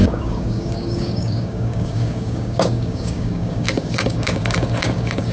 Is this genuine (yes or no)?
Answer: no